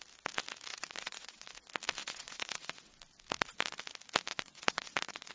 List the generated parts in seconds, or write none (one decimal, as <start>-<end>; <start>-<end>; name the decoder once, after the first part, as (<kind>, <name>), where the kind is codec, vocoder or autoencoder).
0.7-1.5 (vocoder, WaveNeXt); 2.0-2.9; 4.3-5.3